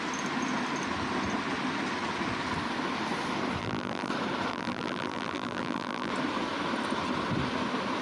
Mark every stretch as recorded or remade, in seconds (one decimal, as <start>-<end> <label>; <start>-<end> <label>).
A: 0.0-3.6 recorded; 3.6-4.1 remade; 4.1-4.5 recorded; 4.5-6.1 remade; 6.1-8.0 recorded